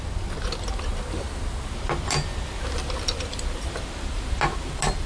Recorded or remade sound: recorded